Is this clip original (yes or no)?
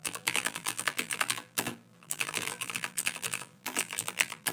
no